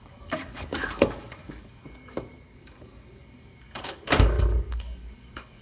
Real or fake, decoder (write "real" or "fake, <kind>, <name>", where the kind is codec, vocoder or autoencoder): fake, codec, DAC